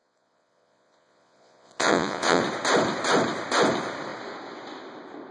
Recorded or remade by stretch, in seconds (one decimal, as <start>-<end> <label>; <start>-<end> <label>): 0.0-2.4 remade; 2.4-5.3 recorded